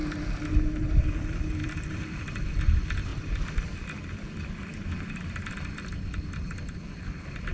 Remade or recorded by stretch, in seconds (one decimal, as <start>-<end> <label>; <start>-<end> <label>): 0.0-1.1 recorded; 1.1-3.1 remade; 3.1-5.5 recorded; 5.5-7.5 remade